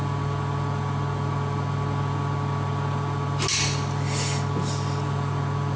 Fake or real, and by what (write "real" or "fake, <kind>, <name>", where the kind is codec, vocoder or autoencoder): real